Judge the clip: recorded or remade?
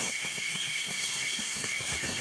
remade